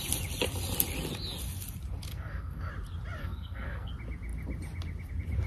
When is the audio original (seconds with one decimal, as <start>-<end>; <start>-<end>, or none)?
0.0-2.1; 2.7-3.2; 3.9-5.5